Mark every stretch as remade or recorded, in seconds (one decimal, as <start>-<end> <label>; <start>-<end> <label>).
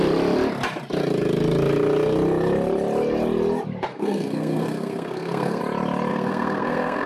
0.0-3.9 recorded; 3.9-5.6 remade; 5.6-6.1 recorded; 6.1-7.1 remade